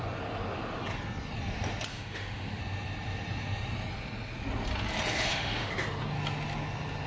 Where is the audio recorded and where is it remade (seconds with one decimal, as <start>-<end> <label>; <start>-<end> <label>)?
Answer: 0.0-1.9 recorded; 1.9-2.6 remade; 2.6-5.1 recorded; 5.1-5.7 remade; 5.7-7.1 recorded